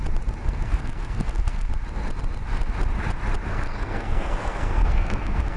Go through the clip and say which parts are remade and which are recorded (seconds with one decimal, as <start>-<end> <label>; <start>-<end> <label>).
0.0-0.4 recorded; 0.4-1.7 remade; 1.7-3.5 recorded; 3.5-5.6 remade